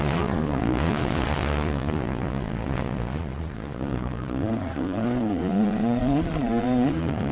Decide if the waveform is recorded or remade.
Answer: remade